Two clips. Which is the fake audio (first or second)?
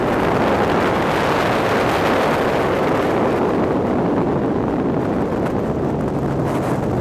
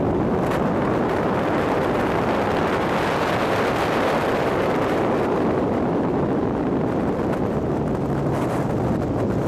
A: second